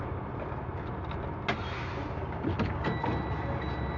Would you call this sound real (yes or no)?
yes